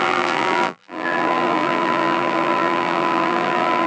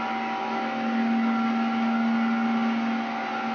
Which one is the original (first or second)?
second